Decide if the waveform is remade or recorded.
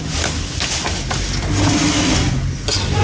recorded